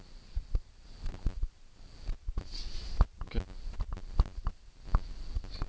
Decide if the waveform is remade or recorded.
recorded